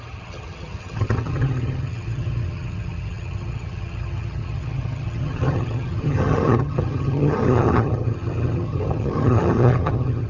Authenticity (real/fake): fake